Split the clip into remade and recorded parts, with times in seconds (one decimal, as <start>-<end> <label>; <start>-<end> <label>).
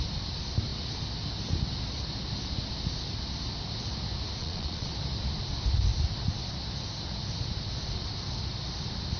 0.0-4.4 recorded; 4.4-4.9 remade; 4.9-9.2 recorded